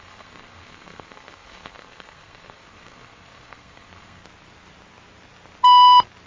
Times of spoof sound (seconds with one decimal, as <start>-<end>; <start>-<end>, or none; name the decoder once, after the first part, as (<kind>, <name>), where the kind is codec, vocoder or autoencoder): 0.0-4.2 (codec, SNAC)